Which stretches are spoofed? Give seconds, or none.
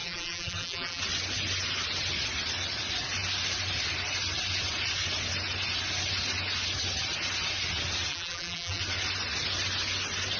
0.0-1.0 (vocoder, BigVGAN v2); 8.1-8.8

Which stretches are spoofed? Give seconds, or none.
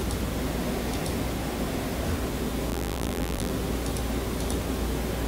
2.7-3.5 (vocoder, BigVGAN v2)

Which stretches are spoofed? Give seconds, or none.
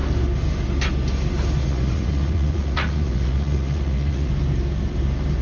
1.6-4.3 (vocoder, Vocos)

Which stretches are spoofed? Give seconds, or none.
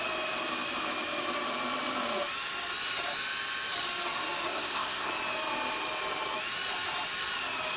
4.5-5.1 (codec, SNAC)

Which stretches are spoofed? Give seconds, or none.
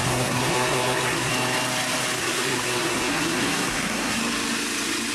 0.0-1.3 (codec, SNAC); 2.2-4.2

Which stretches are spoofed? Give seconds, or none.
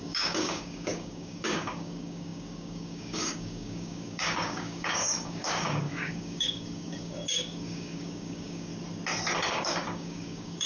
0.0-8.7 (codec, DAC); 9.5-10.7